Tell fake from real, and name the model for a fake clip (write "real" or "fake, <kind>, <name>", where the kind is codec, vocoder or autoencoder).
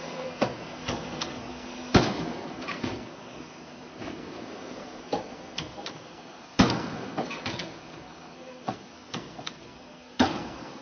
fake, codec, SNAC